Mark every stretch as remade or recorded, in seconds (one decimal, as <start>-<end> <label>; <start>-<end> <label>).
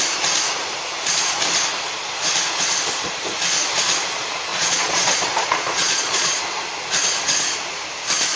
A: 0.0-4.5 recorded; 4.5-6.4 remade; 6.4-8.4 recorded